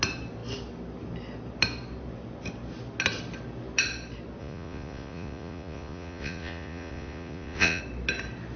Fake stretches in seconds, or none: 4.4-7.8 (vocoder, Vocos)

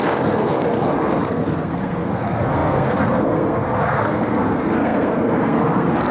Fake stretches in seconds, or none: 0.0-6.1 (codec, SNAC)

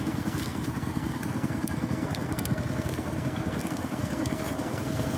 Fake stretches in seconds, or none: 0.0-5.2 (codec, SNAC)

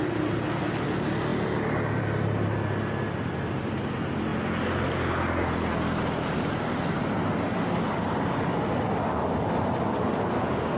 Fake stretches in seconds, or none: none

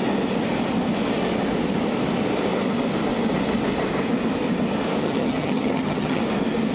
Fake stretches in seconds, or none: 5.0-6.2 (vocoder, HiFi-GAN)